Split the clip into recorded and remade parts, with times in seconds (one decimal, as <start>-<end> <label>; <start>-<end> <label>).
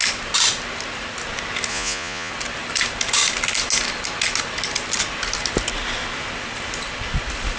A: 0.0-1.7 recorded; 1.7-2.3 remade; 2.3-7.6 recorded